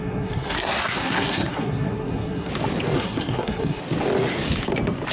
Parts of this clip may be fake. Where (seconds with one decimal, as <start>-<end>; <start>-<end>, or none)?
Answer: 0.0-2.5; 2.9-3.8